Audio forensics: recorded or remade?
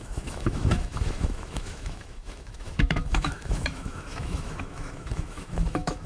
remade